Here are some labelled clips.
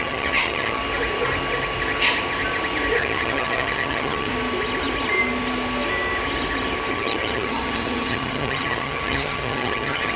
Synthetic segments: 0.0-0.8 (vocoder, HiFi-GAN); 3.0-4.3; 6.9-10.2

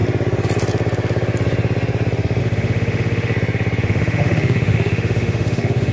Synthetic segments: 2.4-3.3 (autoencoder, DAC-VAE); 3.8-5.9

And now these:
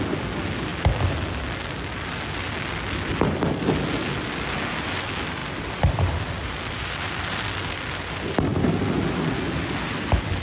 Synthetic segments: 5.4-7.1 (vocoder, BigVGAN v2)